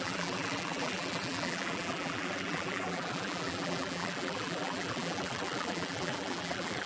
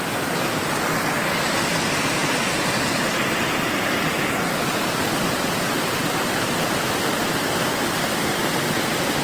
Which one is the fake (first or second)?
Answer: first